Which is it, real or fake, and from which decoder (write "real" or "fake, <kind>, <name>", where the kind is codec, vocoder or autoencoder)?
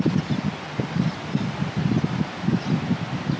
real